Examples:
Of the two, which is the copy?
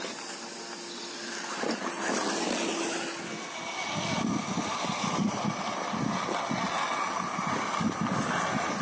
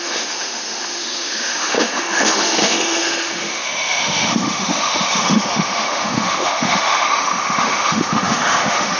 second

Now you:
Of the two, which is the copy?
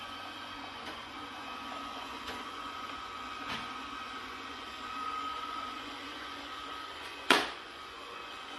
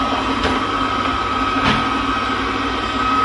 first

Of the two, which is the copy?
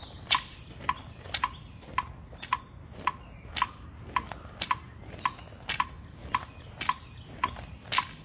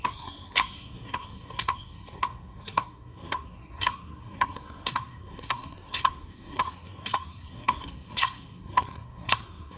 second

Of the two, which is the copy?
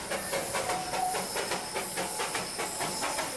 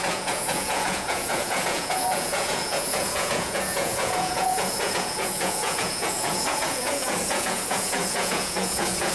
second